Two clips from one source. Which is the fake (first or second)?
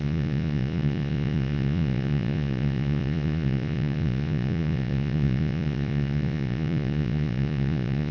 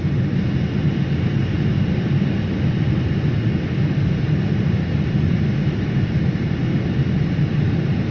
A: first